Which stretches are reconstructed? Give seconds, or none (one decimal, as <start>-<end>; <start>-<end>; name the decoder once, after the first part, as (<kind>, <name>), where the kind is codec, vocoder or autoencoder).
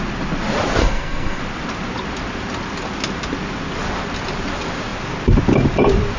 0.8-1.4 (codec, SNAC)